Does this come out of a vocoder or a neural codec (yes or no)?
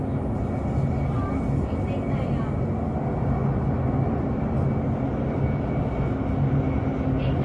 no